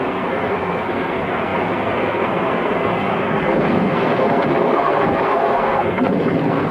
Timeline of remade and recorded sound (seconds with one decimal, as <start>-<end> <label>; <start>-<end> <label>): 0.0-6.7 remade